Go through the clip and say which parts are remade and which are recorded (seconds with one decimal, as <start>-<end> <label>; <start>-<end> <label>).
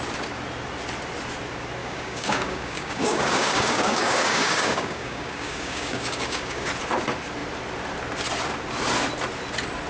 0.0-1.8 recorded; 1.8-6.7 remade; 6.7-9.9 recorded